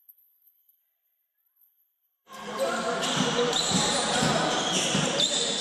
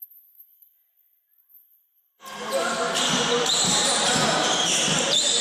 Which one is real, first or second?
second